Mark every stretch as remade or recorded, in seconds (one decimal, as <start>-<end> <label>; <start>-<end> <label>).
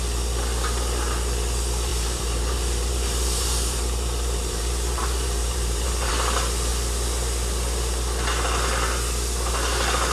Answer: 0.0-1.9 recorded; 1.9-6.1 remade; 6.1-10.1 recorded